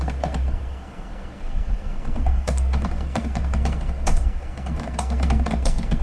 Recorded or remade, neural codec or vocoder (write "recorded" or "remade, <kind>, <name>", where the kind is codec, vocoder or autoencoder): remade, codec, SNAC